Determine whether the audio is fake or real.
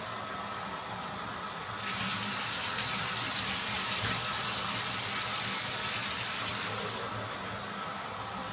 real